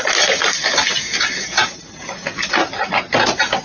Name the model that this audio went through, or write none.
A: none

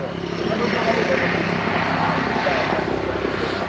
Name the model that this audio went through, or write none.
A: none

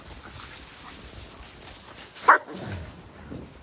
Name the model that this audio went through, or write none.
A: none